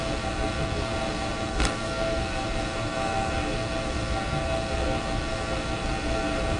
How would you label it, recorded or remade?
remade